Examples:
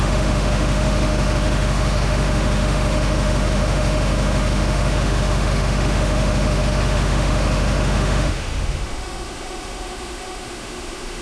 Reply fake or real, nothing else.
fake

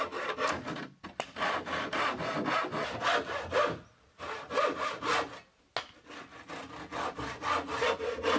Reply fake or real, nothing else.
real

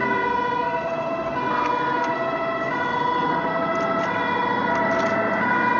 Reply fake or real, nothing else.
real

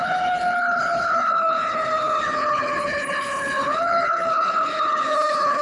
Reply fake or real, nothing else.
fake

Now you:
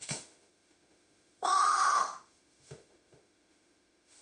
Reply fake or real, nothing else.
fake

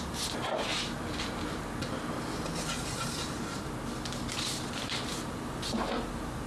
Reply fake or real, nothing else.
real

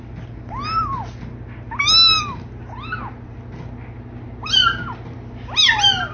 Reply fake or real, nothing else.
real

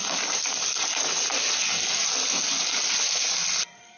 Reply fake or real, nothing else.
real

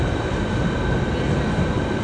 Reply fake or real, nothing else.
real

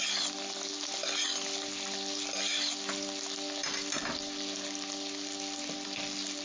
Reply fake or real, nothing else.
real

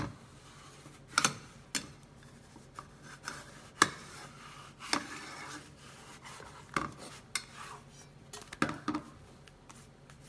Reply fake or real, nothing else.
real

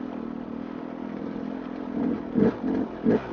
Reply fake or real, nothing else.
real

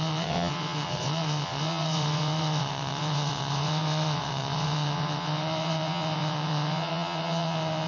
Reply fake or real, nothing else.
fake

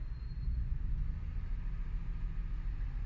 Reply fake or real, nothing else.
real